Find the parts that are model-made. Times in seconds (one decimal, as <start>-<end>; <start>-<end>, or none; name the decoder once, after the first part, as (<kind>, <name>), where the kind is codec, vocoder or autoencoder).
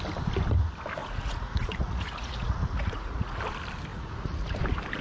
1.0-3.4 (vocoder, Vocos); 3.9-4.6